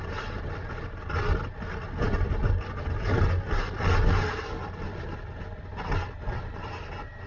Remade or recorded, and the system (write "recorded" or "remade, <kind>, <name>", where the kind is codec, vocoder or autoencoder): recorded